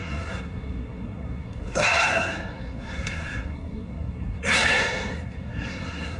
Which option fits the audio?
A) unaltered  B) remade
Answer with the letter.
B